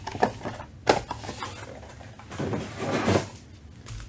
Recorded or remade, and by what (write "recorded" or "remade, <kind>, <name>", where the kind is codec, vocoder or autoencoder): recorded